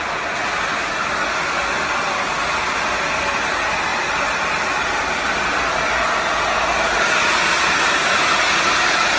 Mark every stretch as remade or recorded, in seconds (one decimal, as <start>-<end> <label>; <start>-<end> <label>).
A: 0.0-9.2 recorded